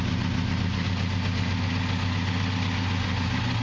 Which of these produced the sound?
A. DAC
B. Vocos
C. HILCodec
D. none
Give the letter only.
D